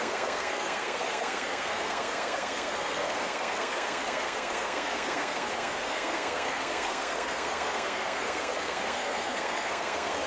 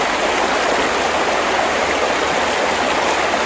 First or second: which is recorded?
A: second